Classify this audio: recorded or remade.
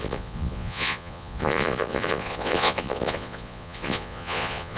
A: remade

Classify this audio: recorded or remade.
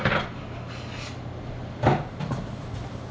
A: recorded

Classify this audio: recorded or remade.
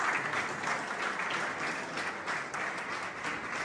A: recorded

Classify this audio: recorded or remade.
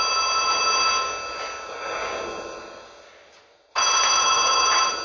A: recorded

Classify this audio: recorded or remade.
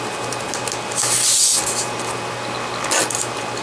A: recorded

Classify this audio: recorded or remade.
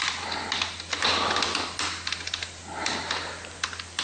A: recorded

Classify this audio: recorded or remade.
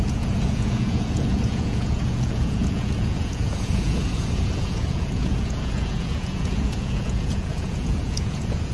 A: remade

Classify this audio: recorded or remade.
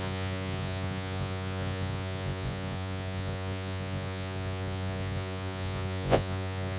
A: remade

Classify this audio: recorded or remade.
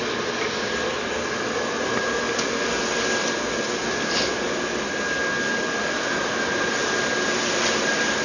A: recorded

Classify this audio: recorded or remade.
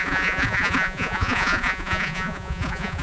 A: remade